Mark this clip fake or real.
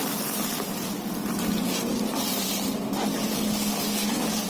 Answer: real